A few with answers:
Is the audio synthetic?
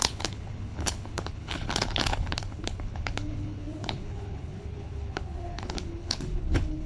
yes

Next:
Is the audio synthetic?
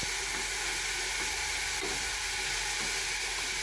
no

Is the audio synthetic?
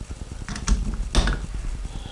no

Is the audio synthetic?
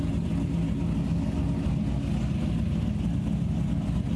no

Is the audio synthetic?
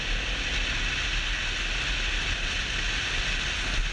no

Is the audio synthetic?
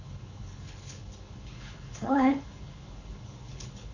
yes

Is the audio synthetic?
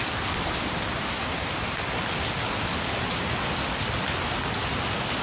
no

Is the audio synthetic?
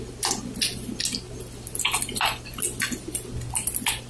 no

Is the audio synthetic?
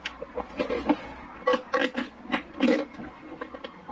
no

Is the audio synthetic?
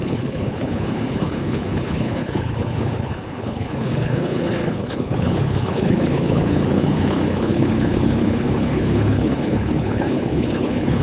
yes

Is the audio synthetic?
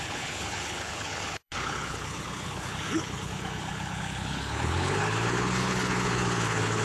yes